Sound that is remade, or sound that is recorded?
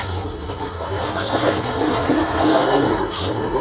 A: remade